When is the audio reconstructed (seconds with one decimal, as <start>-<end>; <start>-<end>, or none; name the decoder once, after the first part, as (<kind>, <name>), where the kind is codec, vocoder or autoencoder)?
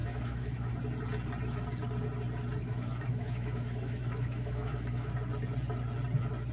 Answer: 0.0-0.7 (autoencoder, DAC-VAE); 2.6-5.1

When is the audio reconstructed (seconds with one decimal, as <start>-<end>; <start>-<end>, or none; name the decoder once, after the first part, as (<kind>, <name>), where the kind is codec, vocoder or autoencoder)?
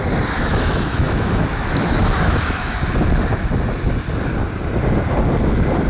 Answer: 0.5-2.8 (autoencoder, DAC-VAE)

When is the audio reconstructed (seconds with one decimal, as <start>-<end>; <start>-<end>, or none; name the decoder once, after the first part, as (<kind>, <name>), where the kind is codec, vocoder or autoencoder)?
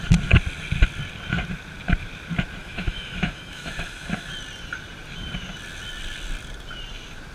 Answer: 2.6-4.3 (autoencoder, DAC-VAE)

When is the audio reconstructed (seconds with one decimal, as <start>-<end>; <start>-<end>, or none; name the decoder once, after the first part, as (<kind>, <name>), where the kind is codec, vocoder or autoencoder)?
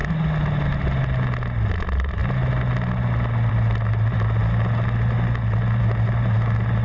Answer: none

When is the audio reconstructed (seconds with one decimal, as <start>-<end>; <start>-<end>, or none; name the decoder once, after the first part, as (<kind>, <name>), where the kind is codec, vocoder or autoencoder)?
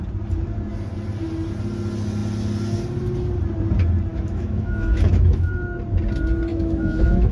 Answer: 4.1-5.5 (autoencoder, DAC-VAE); 6.5-7.3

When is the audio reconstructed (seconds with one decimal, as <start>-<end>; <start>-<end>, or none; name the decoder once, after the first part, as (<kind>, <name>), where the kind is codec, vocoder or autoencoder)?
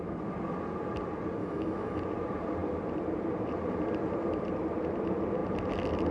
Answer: 1.4-2.0 (autoencoder, DAC-VAE)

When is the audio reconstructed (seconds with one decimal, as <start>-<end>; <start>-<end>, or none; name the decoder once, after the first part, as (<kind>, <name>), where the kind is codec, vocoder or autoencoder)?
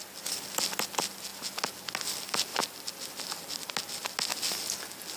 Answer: none